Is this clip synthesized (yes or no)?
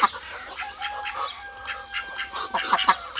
no